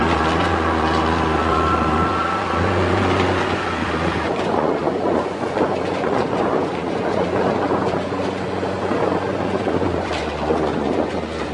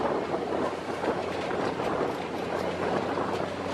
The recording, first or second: second